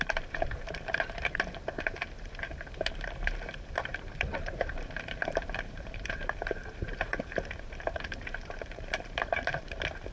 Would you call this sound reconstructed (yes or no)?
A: yes